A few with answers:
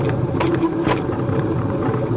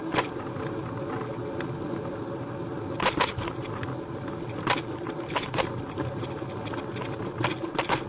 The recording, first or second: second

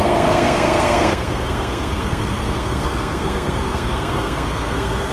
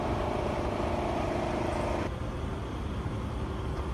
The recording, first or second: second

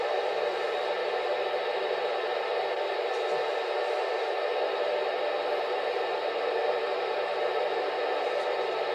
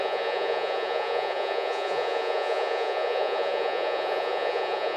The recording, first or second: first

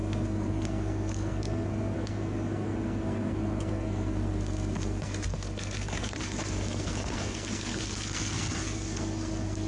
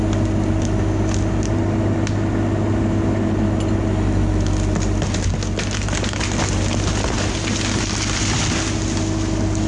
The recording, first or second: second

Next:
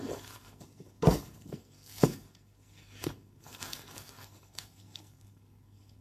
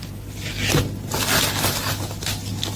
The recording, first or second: second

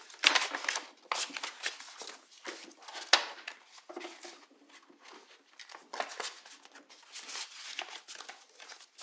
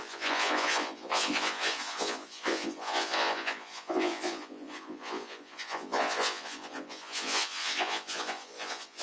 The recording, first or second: first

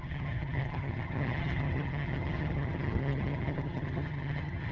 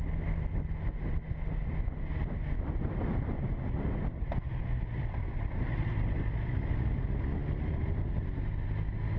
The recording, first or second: second